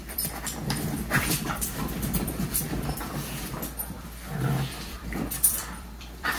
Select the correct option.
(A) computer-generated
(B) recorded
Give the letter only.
A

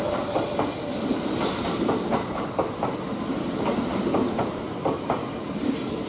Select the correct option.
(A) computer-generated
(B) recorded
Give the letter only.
B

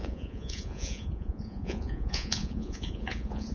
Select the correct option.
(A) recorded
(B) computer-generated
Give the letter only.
B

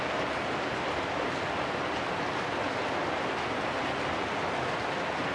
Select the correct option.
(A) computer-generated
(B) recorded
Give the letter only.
B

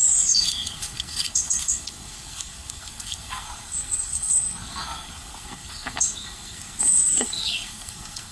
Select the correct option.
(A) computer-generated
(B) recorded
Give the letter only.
A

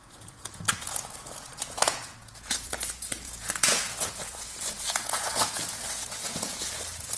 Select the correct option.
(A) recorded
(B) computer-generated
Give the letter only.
B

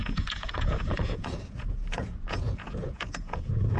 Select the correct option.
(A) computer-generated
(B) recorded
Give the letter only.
A